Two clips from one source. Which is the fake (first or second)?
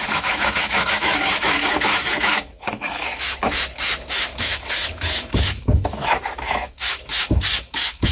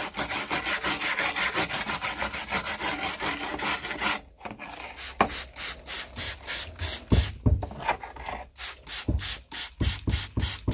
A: first